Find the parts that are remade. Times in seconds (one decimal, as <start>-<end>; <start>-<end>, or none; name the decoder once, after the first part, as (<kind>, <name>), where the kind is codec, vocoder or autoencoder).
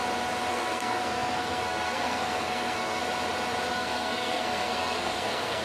0.5-3.0 (codec, SNAC); 3.7-5.6